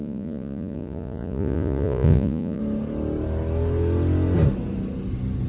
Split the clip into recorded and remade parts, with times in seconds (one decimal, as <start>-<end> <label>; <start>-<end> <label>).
0.0-2.6 remade; 2.6-5.5 recorded

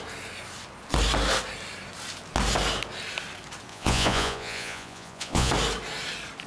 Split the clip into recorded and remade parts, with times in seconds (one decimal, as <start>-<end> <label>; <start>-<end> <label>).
0.0-3.7 recorded; 3.7-5.5 remade; 5.5-6.5 recorded

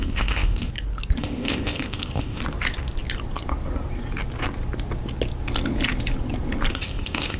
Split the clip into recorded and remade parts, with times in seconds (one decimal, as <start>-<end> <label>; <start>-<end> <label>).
0.0-0.7 remade; 0.7-1.2 recorded; 1.2-2.4 remade; 2.4-6.7 recorded; 6.7-7.4 remade

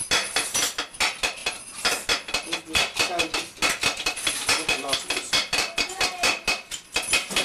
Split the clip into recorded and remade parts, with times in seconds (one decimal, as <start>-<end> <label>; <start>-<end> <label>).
0.0-7.4 recorded